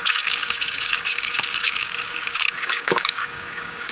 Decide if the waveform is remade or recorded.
remade